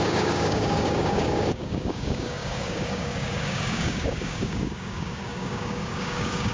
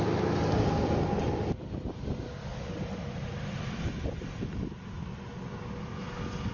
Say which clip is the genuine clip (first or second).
second